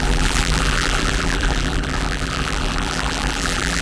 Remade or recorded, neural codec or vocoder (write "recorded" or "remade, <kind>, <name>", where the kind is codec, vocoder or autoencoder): remade, vocoder, BigVGAN v2